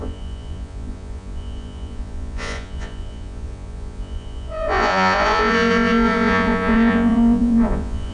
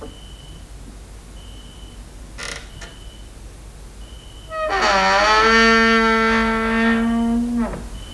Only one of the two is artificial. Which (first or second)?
first